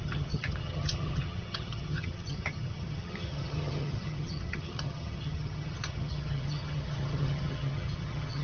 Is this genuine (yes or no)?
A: no